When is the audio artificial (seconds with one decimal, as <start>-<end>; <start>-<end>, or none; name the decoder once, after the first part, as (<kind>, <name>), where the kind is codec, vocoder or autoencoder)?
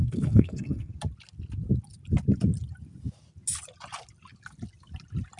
0.0-0.9 (codec, SNAC)